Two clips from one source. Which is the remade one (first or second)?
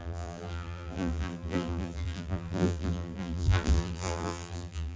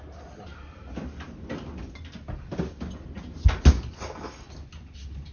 first